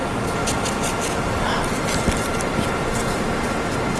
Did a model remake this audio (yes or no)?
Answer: no